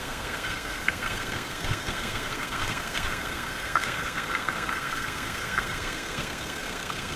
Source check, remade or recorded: remade